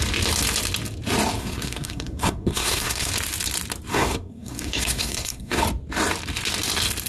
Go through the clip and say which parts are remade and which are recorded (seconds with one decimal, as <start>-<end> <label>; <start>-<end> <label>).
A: 0.0-1.4 recorded; 1.4-3.1 remade; 3.1-3.9 recorded; 3.9-5.6 remade; 5.6-7.1 recorded